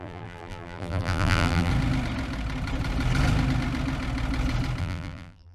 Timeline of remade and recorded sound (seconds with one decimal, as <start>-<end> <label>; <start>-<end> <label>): 0.0-1.7 remade; 1.7-4.8 recorded; 4.8-5.5 remade